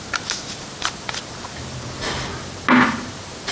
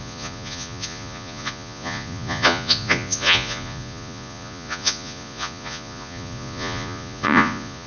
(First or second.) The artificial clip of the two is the second